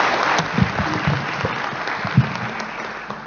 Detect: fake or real real